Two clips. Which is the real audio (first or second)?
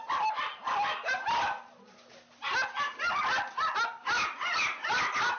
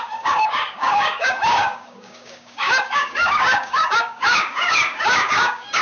first